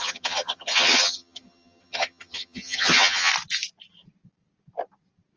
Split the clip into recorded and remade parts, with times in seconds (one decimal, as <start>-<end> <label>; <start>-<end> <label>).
0.0-3.3 remade; 3.3-5.4 recorded